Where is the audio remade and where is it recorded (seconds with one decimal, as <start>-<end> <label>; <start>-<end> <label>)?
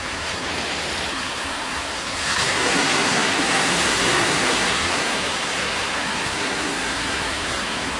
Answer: 0.0-0.5 remade; 0.5-1.1 recorded; 1.1-8.0 remade